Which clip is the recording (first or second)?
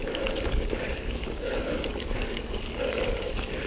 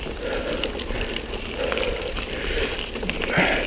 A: second